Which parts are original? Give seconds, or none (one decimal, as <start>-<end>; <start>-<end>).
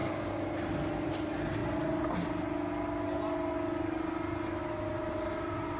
0.0-5.8